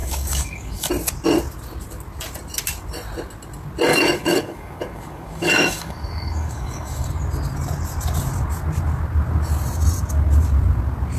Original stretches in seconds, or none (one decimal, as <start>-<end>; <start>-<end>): 0.9-3.9; 7.1-11.2